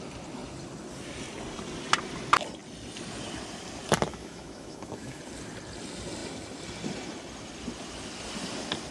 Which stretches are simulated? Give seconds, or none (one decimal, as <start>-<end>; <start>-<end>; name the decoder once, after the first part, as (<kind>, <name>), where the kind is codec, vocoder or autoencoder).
4.1-5.2 (autoencoder, DAC-VAE)